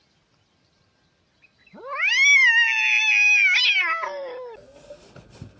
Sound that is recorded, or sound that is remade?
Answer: recorded